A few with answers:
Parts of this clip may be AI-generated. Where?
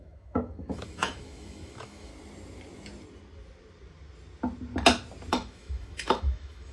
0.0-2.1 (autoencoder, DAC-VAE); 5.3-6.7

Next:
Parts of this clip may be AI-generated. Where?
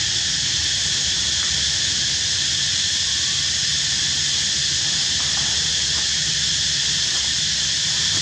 none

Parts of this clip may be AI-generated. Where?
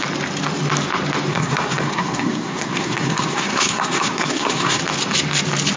1.3-4.8 (codec, SNAC)